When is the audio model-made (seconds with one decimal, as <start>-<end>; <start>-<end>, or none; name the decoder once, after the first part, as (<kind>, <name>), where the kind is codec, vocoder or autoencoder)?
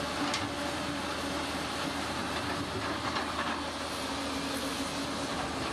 none